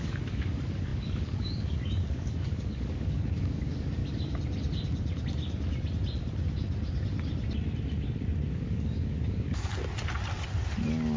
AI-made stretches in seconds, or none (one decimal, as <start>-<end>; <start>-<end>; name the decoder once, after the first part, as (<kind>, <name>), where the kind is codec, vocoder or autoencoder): 0.0-4.0 (codec, DAC); 8.5-9.7